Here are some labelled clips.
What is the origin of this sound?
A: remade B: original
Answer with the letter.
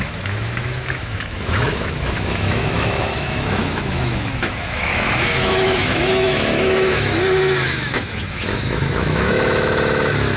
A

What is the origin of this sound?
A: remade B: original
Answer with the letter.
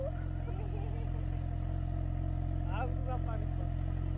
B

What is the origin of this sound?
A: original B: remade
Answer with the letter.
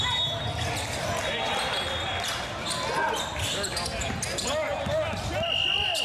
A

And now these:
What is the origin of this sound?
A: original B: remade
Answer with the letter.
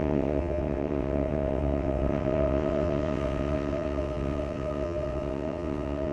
B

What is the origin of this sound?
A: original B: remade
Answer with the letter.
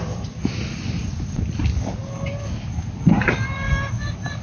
A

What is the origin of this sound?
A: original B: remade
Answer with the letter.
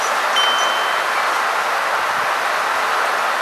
A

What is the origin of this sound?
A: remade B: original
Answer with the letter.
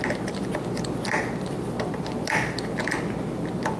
B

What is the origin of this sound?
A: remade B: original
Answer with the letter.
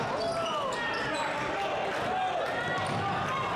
B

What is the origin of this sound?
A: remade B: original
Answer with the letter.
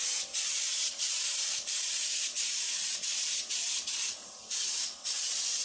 A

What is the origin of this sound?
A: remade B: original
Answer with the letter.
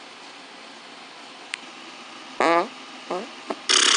B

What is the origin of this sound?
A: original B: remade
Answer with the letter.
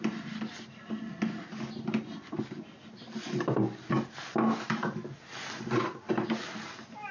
A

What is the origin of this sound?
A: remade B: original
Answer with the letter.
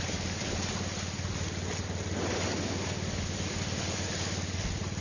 B